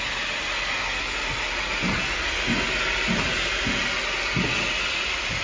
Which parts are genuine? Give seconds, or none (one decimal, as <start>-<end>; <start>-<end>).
0.0-5.4